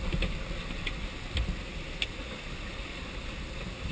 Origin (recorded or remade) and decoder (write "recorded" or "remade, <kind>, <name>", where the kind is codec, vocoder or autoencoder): recorded